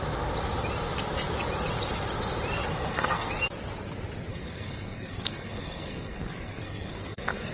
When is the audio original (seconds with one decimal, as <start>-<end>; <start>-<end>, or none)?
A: 0.0-2.7; 3.3-4.3